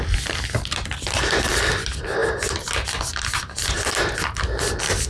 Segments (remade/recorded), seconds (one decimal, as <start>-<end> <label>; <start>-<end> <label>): 0.0-5.1 recorded